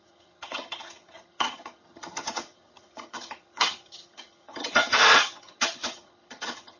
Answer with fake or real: fake